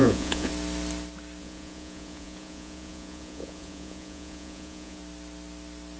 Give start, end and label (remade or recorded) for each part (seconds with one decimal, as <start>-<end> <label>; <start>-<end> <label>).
0.0-0.5 remade; 0.5-1.4 recorded; 1.4-5.0 remade; 5.0-6.0 recorded